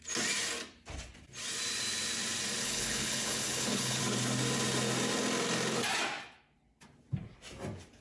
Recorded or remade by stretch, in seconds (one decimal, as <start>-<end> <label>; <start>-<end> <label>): 0.0-2.6 recorded; 2.6-4.0 remade; 4.0-8.0 recorded